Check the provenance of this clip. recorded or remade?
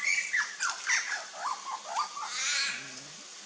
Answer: recorded